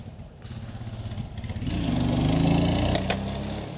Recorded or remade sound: recorded